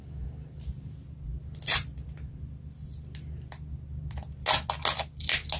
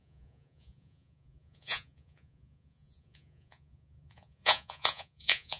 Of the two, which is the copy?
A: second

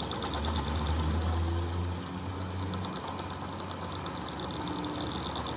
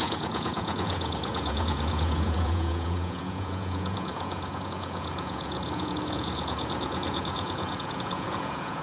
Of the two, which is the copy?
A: second